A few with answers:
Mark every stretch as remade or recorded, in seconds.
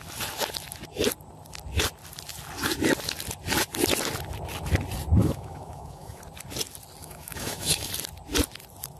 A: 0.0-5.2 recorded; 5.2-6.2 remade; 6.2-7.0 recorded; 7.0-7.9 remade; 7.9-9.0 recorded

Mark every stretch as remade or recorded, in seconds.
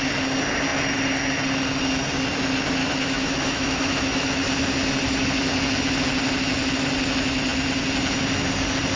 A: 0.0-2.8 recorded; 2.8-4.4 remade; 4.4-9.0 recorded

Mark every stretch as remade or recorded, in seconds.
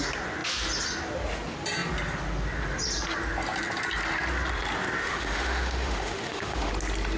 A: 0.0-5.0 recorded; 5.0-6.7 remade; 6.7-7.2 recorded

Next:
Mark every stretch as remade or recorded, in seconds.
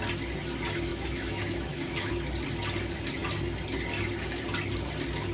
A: 0.0-0.9 recorded; 0.9-2.1 remade; 2.1-5.3 recorded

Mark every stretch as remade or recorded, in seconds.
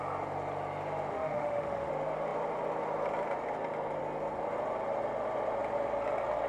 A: 0.0-1.1 recorded; 1.1-1.9 remade; 1.9-6.5 recorded